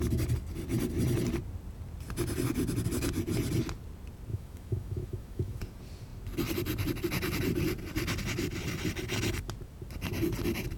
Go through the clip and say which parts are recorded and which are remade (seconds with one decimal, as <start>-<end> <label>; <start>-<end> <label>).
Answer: 0.0-4.3 recorded; 4.3-5.6 remade; 5.6-10.8 recorded